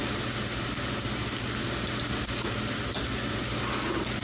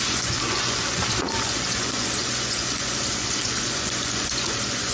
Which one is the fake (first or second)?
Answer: second